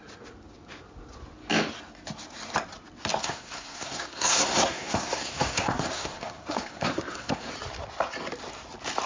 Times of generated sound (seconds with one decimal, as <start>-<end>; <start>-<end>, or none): 3.2-7.5